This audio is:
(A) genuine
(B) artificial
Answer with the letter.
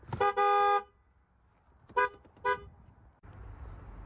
A